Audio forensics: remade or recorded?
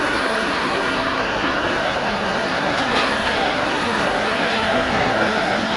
remade